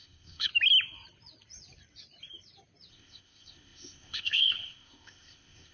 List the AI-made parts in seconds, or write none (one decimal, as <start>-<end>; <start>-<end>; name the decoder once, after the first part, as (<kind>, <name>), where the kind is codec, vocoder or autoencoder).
0.0-0.5 (codec, ZipCodec); 2.9-5.7